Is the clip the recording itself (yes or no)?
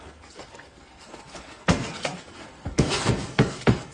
no